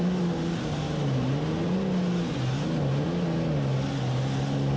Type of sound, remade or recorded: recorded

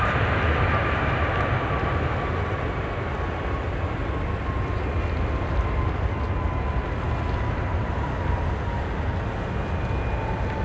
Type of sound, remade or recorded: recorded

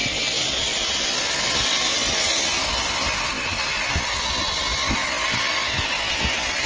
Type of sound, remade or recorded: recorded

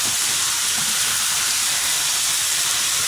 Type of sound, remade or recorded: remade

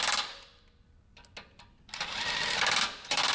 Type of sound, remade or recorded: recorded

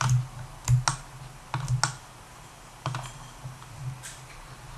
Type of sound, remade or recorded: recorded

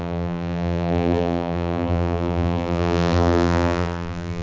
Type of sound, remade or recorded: remade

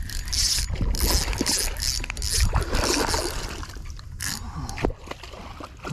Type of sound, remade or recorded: recorded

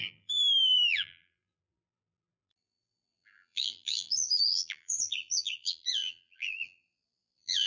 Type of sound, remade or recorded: remade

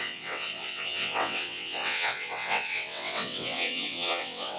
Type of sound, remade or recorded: remade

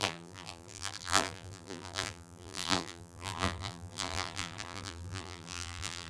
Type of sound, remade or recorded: remade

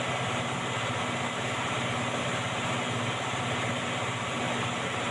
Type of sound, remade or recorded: recorded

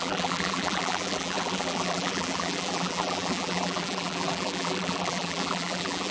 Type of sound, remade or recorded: remade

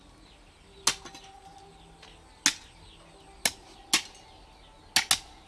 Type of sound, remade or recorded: recorded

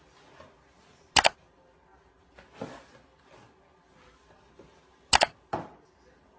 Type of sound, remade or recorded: recorded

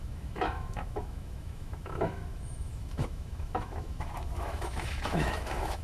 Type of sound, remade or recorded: remade